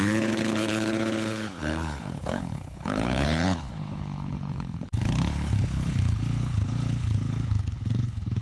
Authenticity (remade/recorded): remade